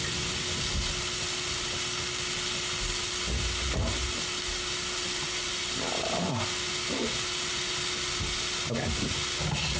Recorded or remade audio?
recorded